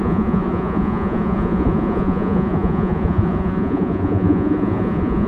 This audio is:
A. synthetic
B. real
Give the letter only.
A